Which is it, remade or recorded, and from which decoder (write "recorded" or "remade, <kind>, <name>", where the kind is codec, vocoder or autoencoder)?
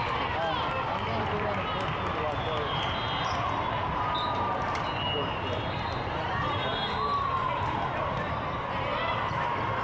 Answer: recorded